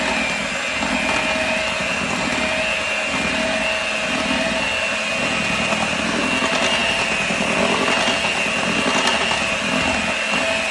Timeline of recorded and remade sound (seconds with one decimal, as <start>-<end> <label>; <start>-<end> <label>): 0.0-6.8 recorded; 6.8-7.6 remade; 7.6-10.7 recorded